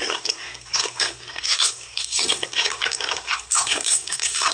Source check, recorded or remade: remade